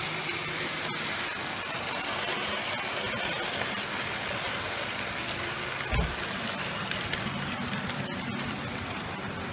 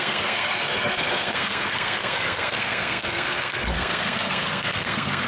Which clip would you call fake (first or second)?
second